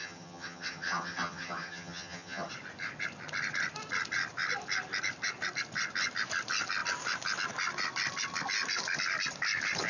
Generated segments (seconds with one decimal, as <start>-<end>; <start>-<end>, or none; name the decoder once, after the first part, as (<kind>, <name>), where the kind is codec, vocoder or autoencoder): 0.0-2.5 (vocoder, HiFi-GAN)

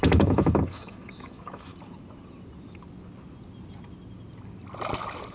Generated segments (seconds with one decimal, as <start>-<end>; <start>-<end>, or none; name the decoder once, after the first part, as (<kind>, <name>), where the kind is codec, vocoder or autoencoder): 0.0-1.7 (autoencoder, DAC-VAE)

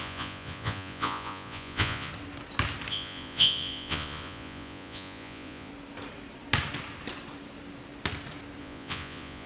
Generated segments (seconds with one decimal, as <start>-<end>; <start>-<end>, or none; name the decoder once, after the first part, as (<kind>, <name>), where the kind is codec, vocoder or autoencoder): 0.0-2.1 (vocoder, Vocos); 2.9-5.7; 8.6-9.5

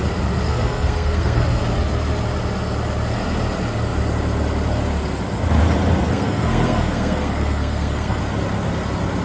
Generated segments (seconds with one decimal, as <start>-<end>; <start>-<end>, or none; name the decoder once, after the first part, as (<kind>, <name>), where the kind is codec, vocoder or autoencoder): 0.5-1.6 (codec, SNAC); 6.1-8.2

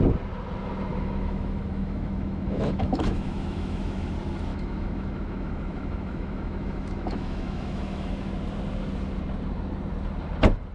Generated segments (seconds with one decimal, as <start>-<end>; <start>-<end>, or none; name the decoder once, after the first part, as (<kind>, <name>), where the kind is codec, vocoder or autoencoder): 0.9-4.1 (autoencoder, DAC-VAE); 4.5-8.1